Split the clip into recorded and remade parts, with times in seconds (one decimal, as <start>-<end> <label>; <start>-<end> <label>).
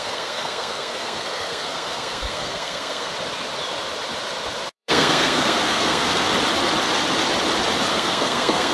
0.0-3.1 remade; 3.1-4.7 recorded; 4.7-6.3 remade; 6.3-7.9 recorded; 7.9-8.7 remade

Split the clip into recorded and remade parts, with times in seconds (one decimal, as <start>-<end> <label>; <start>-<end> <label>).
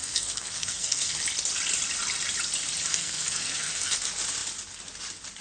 0.0-1.2 remade; 1.2-2.9 recorded; 2.9-4.0 remade; 4.0-5.4 recorded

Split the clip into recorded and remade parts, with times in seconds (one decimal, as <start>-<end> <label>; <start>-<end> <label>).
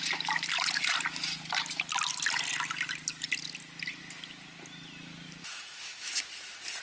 0.0-5.4 recorded; 5.4-6.2 remade; 6.2-6.8 recorded